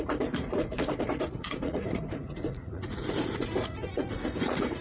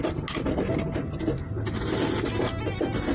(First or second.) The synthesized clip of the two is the first